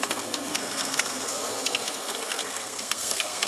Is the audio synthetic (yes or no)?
yes